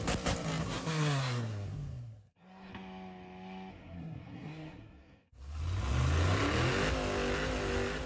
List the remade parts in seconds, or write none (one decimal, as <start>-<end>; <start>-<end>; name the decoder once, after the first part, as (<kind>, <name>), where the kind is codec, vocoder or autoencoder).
0.6-2.7 (codec, SNAC); 3.7-5.6